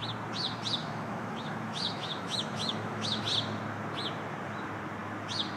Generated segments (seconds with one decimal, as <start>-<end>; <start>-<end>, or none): 0.8-3.2